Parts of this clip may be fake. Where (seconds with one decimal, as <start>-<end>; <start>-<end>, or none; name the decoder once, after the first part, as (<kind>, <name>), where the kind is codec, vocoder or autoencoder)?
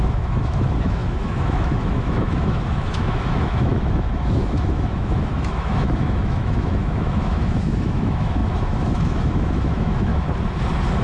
0.0-10.1 (autoencoder, DAC-VAE)